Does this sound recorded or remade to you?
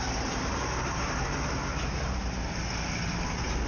recorded